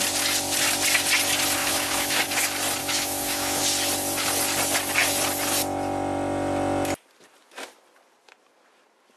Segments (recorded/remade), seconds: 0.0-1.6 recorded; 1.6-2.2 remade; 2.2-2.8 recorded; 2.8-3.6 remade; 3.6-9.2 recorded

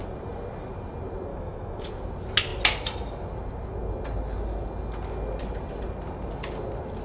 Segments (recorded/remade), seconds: 0.0-1.3 recorded; 1.3-1.9 remade; 1.9-7.0 recorded

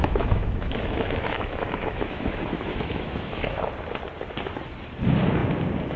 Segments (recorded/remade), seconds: 0.0-3.6 remade; 3.6-6.0 recorded

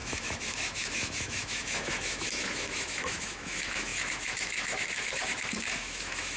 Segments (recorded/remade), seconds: 0.0-6.4 remade

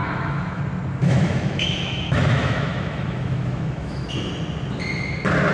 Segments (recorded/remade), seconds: 0.0-0.6 remade; 0.6-1.0 recorded; 1.0-4.3 remade; 4.3-5.5 recorded

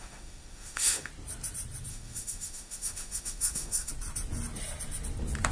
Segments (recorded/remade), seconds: 0.0-1.1 remade; 1.1-1.9 recorded; 1.9-3.9 remade; 3.9-5.5 recorded

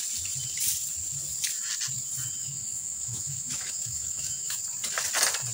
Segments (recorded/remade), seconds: 0.0-2.4 recorded; 2.4-4.6 remade; 4.6-5.5 recorded

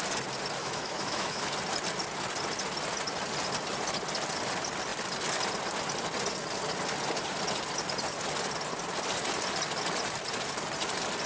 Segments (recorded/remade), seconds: 0.0-0.6 recorded; 0.6-1.5 remade; 1.5-11.3 recorded